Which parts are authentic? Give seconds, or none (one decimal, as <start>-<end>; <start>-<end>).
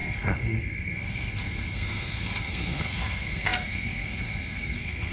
none